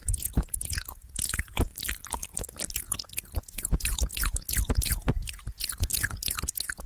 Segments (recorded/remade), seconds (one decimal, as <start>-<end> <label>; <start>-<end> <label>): 0.0-1.7 remade; 1.7-2.7 recorded; 2.7-6.9 remade